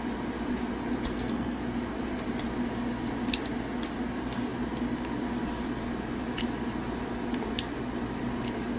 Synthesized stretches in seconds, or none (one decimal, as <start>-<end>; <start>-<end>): 1.1-1.6